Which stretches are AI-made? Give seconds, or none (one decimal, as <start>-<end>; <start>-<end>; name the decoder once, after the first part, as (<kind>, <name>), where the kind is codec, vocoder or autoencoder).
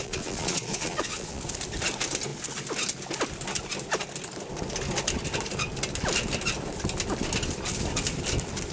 0.0-1.4 (vocoder, Vocos)